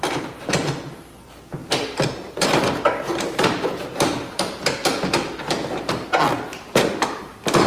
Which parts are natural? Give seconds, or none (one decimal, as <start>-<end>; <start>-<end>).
0.0-1.6; 4.6-6.5; 7.3-7.7